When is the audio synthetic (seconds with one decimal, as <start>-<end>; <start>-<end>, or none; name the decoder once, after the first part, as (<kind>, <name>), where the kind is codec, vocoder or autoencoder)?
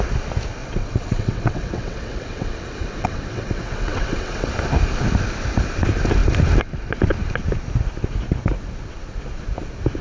0.6-4.5 (vocoder, WaveNeXt)